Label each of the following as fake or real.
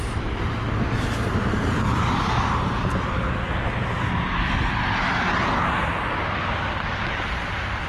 real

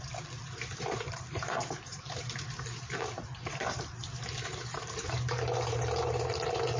fake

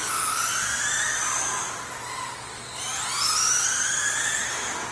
real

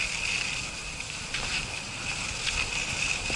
real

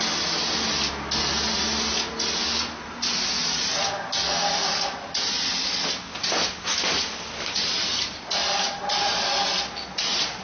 real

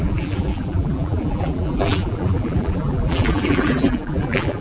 fake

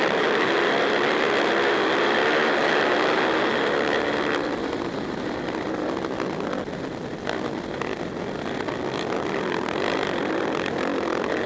real